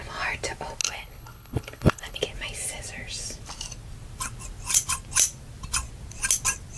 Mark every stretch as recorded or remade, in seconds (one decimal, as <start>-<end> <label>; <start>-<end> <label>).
0.0-0.8 recorded; 0.8-2.2 remade; 2.2-6.8 recorded